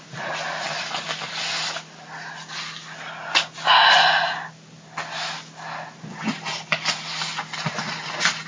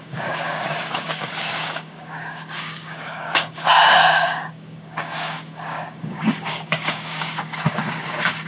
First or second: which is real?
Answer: first